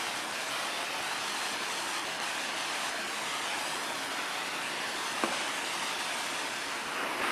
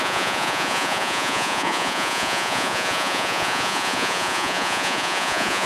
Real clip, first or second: first